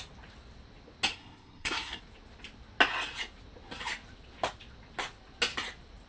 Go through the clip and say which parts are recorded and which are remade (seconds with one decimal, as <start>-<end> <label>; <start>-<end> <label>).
0.0-1.1 recorded; 1.1-2.0 remade; 2.0-6.1 recorded